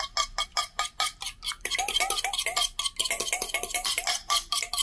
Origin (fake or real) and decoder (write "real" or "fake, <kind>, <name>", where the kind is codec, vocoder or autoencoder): real